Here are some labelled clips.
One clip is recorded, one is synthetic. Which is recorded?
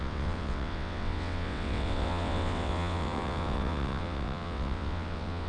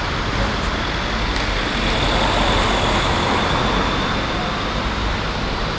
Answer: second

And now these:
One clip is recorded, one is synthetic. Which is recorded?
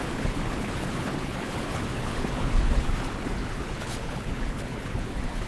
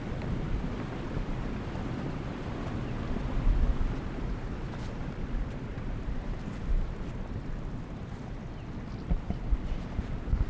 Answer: second